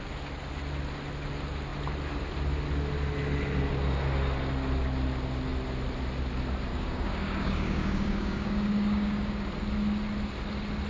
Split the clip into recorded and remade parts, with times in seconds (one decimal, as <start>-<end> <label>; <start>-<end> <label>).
0.0-6.7 recorded; 6.7-9.4 remade; 9.4-10.9 recorded